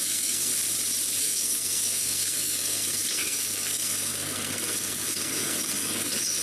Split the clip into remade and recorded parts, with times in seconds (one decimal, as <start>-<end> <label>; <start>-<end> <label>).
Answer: 0.0-0.5 remade; 0.5-1.2 recorded; 1.2-6.4 remade